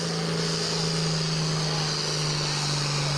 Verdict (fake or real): real